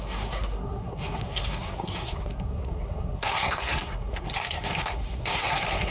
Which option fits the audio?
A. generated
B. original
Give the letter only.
A